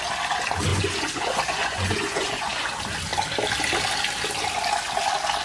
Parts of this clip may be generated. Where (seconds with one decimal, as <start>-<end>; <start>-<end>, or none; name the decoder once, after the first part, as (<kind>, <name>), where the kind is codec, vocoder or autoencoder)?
0.7-2.7 (vocoder, Vocos)